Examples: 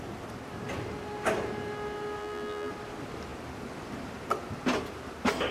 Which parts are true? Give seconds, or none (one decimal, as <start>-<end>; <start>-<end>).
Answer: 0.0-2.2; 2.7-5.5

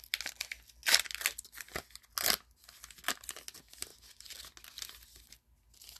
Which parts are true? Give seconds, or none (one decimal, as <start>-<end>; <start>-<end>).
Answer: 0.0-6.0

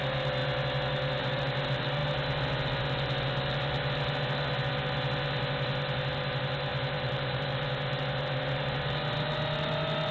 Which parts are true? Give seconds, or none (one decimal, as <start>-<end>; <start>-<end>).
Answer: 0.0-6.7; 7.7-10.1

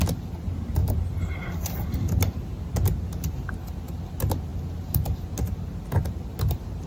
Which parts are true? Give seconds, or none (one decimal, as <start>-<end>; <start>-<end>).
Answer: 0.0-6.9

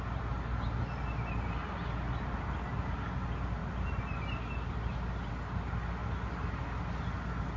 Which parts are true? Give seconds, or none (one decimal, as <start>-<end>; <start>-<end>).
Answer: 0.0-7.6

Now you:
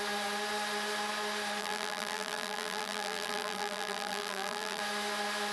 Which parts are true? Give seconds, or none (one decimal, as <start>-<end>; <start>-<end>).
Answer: 0.0-1.6; 4.8-5.5

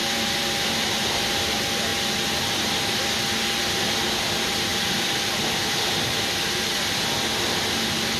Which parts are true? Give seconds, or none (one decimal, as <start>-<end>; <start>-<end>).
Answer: 1.3-4.7; 5.9-8.2

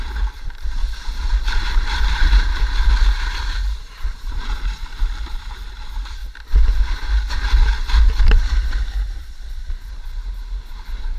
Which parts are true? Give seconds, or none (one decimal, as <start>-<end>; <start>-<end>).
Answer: 0.8-1.5; 2.5-3.3; 6.2-8.2